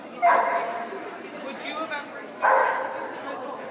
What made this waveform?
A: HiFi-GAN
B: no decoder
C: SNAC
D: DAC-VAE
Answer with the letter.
B